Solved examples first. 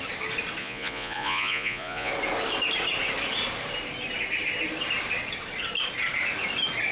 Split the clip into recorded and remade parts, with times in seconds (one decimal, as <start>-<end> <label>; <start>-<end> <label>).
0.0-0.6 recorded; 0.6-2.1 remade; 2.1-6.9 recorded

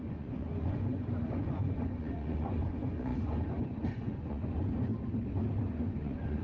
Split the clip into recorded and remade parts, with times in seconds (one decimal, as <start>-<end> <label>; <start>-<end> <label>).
0.0-4.9 remade; 4.9-5.6 recorded; 5.6-6.4 remade

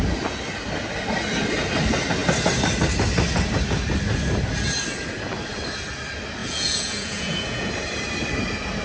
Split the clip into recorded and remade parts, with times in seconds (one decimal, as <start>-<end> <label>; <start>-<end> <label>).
0.0-6.4 recorded; 6.4-7.7 remade; 7.7-8.8 recorded

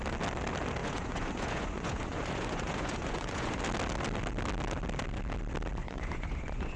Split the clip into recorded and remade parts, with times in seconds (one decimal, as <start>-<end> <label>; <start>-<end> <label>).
0.0-0.8 recorded; 0.8-3.6 remade; 3.6-5.8 recorded; 5.8-6.8 remade

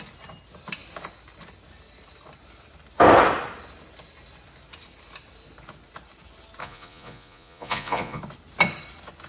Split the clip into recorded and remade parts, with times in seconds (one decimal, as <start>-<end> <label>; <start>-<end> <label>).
0.0-6.6 recorded; 6.6-8.2 remade; 8.2-9.3 recorded